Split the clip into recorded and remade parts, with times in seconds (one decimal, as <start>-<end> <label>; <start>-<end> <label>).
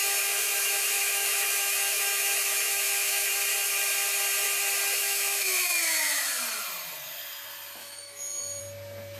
0.0-3.3 remade; 3.3-5.0 recorded; 5.0-6.2 remade; 6.2-7.8 recorded; 7.8-8.6 remade; 8.6-9.2 recorded